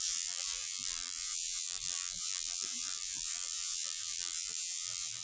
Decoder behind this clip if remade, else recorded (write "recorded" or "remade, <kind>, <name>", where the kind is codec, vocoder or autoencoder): remade, vocoder, BigVGAN v2